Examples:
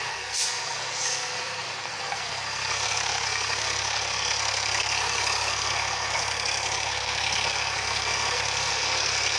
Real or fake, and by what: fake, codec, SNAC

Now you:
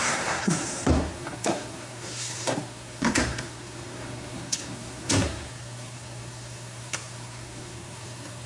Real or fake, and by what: fake, codec, SNAC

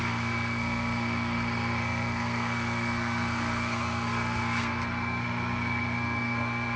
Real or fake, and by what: fake, codec, SNAC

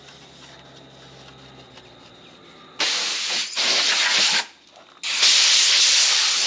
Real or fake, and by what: real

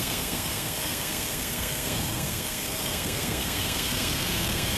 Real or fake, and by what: fake, codec, SNAC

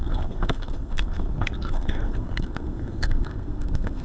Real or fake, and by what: fake, codec, SNAC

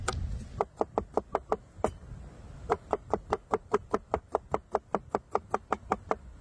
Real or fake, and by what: real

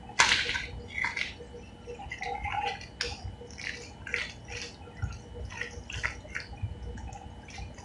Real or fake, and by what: real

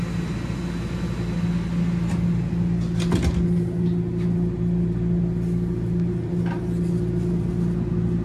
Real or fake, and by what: real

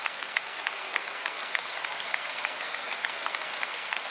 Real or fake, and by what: fake, codec, SNAC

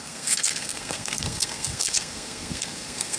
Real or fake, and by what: fake, codec, SNAC